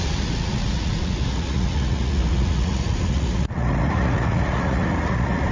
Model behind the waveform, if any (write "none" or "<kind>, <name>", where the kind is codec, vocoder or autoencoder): vocoder, Vocos